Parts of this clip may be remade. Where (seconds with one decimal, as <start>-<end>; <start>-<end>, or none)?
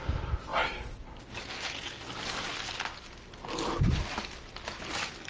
none